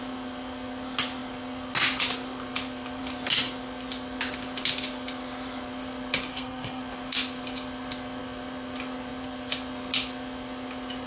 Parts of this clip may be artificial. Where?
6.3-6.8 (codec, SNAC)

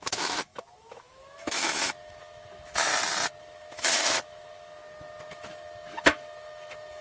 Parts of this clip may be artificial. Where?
0.0-2.9 (autoencoder, DAC-VAE); 3.4-4.8; 5.3-7.0

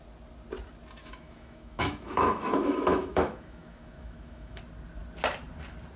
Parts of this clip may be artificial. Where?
1.0-4.6 (autoencoder, DAC-VAE)

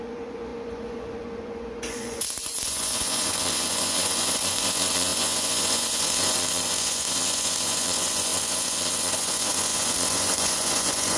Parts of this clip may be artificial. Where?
0.0-11.2 (vocoder, Vocos)

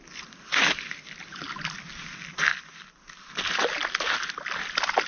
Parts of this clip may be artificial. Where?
2.5-3.3 (vocoder, BigVGAN v2)